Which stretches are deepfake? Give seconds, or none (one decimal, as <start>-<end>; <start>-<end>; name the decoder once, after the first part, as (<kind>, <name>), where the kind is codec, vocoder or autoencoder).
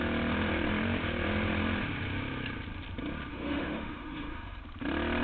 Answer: 3.3-4.6 (autoencoder, DAC-VAE)